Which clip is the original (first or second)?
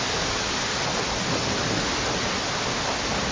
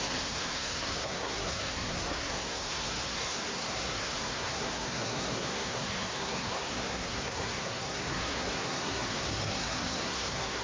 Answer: first